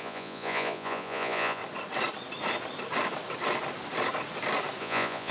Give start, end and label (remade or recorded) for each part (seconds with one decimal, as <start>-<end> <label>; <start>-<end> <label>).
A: 0.0-1.6 remade; 1.6-4.8 recorded; 4.8-5.3 remade